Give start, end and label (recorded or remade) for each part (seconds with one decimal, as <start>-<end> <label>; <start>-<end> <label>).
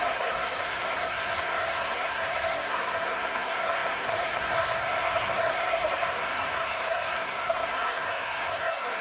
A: 0.0-9.0 remade